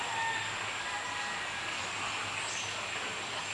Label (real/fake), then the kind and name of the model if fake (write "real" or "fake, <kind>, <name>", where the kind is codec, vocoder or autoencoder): real